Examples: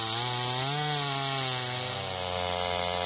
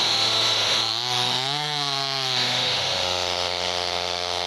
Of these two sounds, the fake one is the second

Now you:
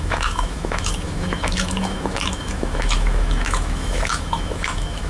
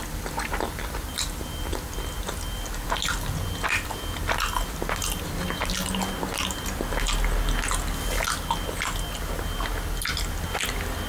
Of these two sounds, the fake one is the first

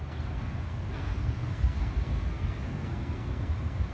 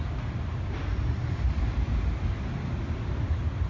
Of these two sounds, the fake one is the first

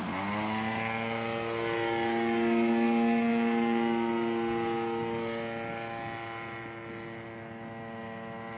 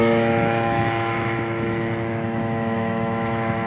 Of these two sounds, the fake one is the second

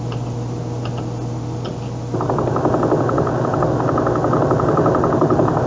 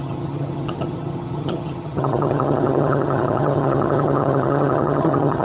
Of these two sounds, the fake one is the second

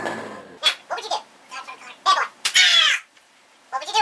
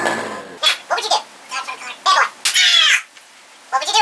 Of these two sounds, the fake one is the first